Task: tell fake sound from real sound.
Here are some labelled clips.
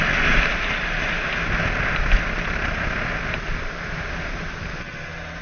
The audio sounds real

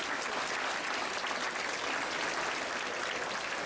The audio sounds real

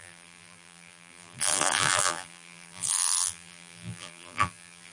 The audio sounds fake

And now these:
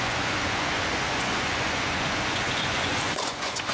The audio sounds fake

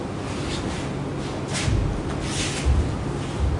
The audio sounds real